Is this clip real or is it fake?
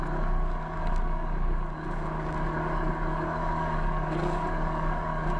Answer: fake